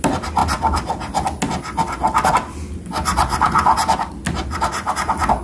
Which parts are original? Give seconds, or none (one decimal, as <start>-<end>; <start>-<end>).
0.0-5.4